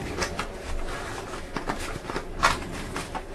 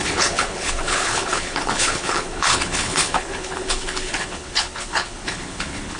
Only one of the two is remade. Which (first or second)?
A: second